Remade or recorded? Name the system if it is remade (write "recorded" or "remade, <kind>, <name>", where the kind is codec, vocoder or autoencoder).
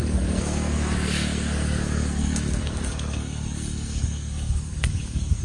remade, codec, SNAC